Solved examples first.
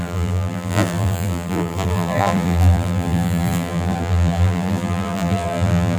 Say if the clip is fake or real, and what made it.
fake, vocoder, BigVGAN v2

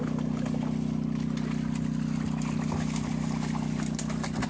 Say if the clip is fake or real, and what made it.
real